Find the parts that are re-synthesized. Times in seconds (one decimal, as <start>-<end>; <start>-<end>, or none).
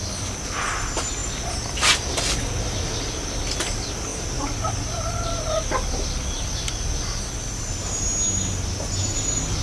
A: none